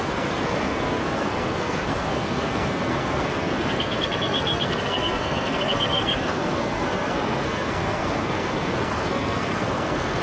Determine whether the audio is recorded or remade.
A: remade